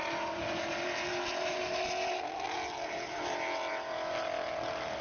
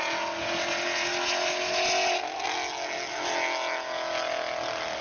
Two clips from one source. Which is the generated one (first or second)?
first